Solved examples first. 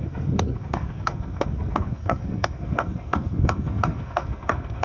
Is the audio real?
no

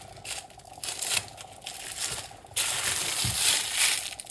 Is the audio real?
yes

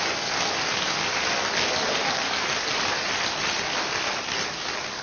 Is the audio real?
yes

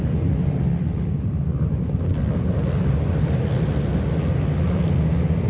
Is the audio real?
yes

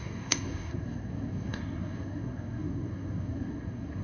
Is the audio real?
no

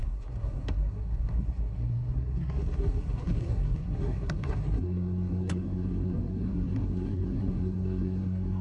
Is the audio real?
no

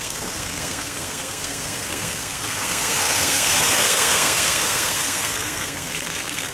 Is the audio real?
no